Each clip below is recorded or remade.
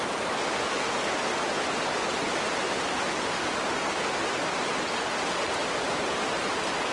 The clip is recorded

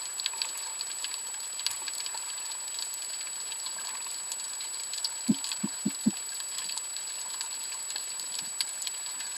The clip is recorded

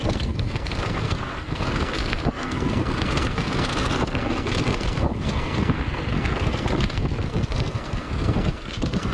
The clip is remade